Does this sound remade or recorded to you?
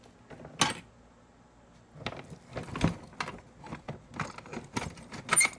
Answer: recorded